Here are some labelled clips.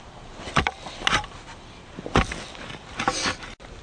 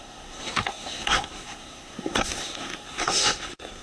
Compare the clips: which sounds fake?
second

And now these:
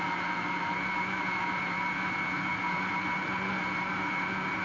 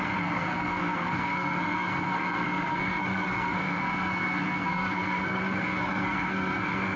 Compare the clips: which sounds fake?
second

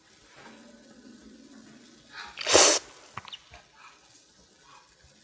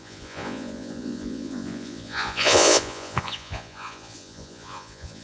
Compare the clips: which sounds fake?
second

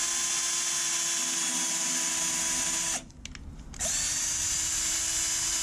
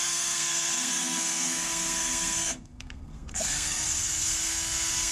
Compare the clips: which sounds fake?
second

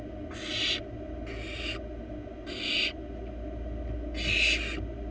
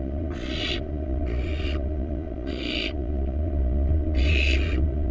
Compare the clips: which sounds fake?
second